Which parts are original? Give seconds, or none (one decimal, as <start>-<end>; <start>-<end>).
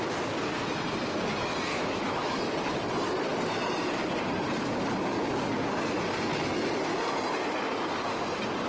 0.0-1.7; 2.4-8.7